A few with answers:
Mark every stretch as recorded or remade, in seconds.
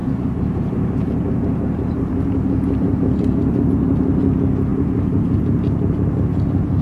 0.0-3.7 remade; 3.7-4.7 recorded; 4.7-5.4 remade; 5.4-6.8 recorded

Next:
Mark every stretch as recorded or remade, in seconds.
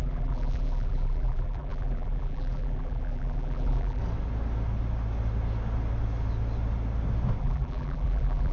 0.0-4.0 remade; 4.0-7.4 recorded; 7.4-8.5 remade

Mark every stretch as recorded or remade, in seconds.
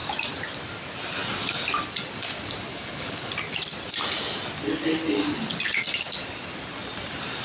0.0-2.7 recorded; 2.7-3.3 remade; 3.3-7.4 recorded